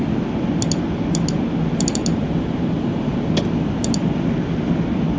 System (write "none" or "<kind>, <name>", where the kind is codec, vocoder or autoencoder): none